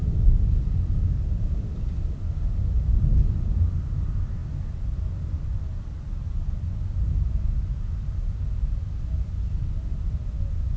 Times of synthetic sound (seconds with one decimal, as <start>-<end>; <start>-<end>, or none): none